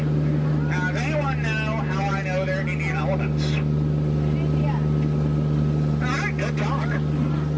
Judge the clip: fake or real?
real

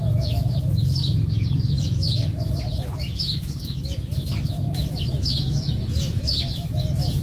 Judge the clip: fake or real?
fake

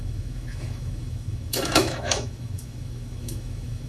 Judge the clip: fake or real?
fake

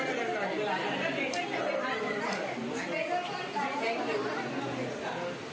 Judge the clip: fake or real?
real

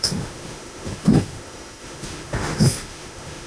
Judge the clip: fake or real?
fake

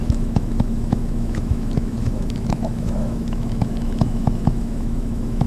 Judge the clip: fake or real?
fake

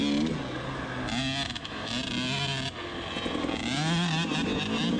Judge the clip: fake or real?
real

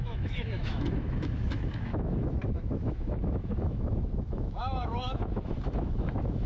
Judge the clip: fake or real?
fake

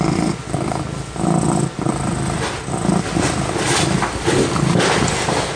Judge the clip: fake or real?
real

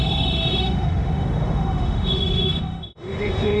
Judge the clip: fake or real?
fake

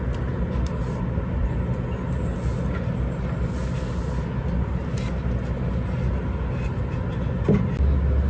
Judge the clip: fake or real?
real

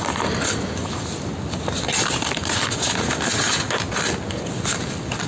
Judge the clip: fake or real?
real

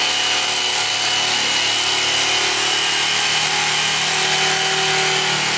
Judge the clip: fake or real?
real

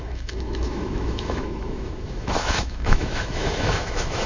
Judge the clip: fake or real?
fake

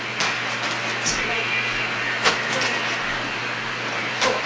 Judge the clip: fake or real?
real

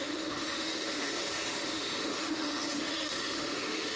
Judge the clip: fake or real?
fake